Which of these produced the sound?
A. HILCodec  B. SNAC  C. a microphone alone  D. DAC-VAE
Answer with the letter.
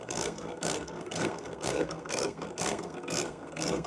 B